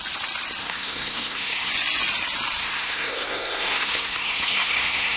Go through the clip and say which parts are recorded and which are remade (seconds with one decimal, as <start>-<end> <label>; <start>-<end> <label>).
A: 0.0-0.6 recorded; 0.6-1.7 remade; 1.7-2.6 recorded; 2.6-5.2 remade